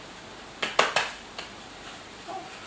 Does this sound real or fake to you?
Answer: real